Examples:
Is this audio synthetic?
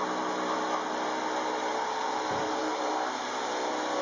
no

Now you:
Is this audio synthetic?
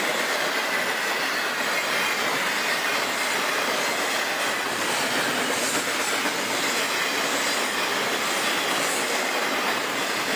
no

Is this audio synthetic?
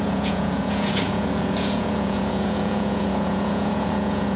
yes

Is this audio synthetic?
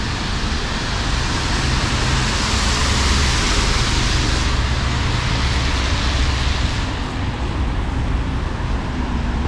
no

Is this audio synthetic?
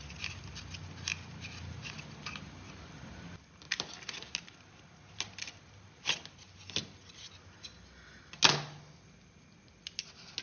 no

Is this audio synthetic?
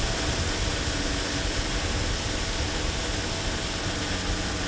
no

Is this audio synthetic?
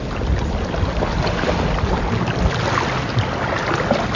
no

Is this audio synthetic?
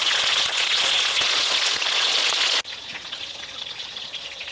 yes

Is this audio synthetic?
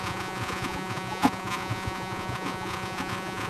yes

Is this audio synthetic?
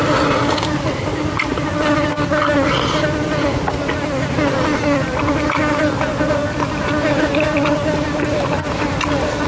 no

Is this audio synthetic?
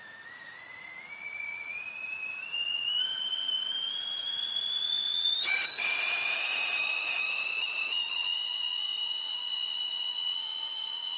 yes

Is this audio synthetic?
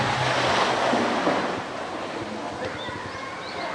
no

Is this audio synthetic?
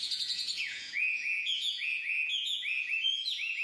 yes